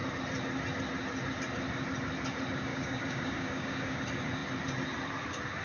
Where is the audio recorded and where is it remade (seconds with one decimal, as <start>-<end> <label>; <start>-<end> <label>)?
0.0-2.7 recorded; 2.7-4.0 remade; 4.0-5.6 recorded